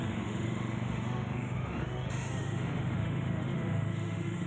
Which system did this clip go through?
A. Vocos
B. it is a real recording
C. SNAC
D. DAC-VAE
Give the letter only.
D